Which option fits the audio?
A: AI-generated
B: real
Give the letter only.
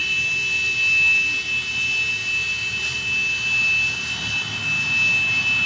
B